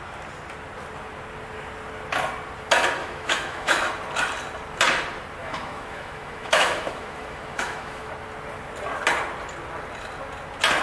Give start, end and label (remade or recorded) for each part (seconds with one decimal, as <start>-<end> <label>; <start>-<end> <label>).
0.0-3.0 recorded; 3.0-3.9 remade; 3.9-5.4 recorded; 5.4-8.1 remade; 8.1-10.8 recorded